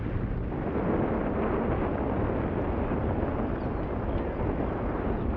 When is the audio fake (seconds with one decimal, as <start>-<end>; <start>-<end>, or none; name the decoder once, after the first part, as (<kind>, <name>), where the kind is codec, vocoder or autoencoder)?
none

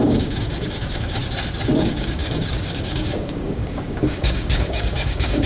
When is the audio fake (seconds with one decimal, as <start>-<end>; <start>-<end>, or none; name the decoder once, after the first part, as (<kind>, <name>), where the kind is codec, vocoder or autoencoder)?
0.0-1.2 (codec, DAC); 1.8-5.5

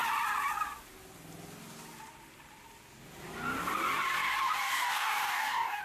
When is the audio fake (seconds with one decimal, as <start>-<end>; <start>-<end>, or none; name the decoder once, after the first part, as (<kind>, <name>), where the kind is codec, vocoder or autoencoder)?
4.6-5.8 (codec, DAC)

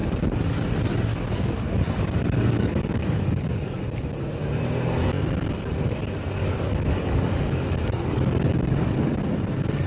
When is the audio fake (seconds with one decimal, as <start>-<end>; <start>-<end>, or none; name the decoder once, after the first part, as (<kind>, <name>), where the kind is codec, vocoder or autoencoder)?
0.0-0.7 (codec, DAC); 1.1-3.8; 6.4-9.2

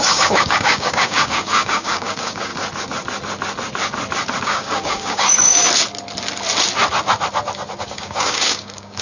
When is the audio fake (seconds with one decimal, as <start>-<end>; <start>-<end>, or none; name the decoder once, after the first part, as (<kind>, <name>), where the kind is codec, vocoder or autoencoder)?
0.0-2.5 (codec, DAC); 4.4-5.6; 7.8-9.0

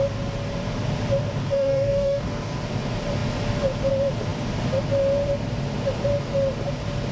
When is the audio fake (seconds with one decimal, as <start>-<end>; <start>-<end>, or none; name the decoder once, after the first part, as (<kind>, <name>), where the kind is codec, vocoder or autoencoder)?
1.4-2.6 (codec, DAC)

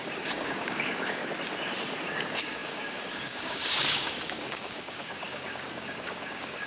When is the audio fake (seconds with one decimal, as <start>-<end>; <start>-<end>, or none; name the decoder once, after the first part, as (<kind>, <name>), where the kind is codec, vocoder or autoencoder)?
0.0-1.2 (codec, DAC); 2.1-6.7

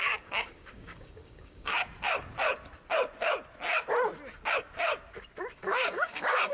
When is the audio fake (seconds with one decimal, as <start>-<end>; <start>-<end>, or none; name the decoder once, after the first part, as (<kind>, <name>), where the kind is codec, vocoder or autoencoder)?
0.0-1.7 (codec, DAC); 5.6-6.5